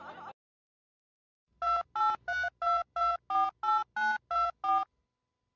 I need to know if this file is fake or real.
real